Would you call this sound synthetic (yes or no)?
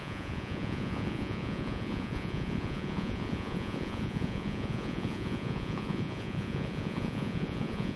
yes